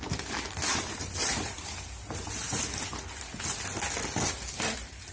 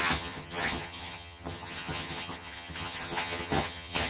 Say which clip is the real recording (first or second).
first